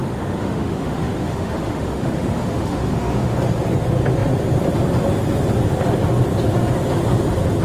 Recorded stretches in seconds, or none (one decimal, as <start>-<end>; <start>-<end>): 3.3-7.6